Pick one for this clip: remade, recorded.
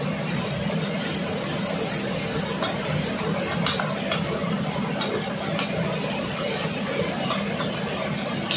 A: recorded